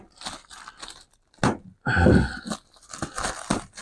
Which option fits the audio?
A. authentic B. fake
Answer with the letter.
A